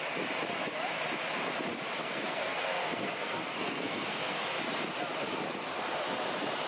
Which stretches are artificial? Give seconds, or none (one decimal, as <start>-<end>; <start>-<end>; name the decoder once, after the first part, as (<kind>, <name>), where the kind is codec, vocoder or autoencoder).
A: 2.0-4.4 (codec, SNAC)